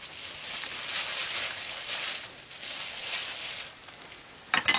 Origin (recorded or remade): recorded